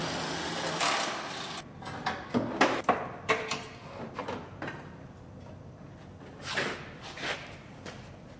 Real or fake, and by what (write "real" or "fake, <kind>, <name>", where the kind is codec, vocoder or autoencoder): real